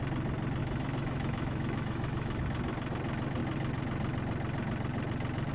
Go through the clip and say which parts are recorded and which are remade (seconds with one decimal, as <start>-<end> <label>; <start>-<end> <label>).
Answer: 0.0-0.6 recorded; 0.6-2.4 remade; 2.4-5.5 recorded